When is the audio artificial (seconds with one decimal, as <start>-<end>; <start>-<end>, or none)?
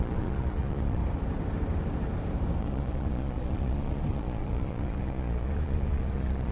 0.0-1.0; 2.6-6.5